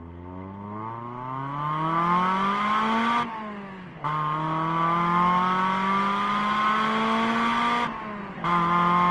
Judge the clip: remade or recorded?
recorded